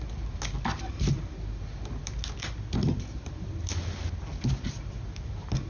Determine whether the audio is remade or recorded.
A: recorded